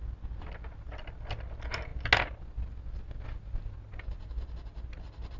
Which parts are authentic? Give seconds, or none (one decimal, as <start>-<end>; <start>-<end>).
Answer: 0.0-5.4